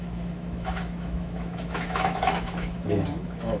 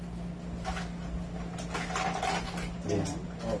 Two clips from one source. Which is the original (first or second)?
second